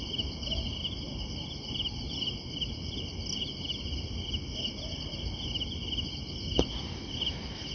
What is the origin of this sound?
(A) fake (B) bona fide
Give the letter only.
B